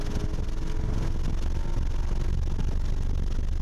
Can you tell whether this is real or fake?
real